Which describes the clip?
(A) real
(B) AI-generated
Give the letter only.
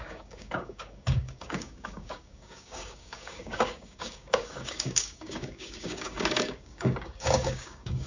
B